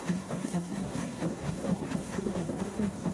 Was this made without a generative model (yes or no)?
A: no